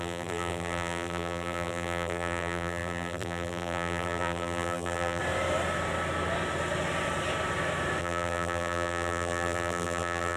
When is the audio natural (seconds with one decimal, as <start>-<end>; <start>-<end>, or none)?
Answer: 5.2-8.0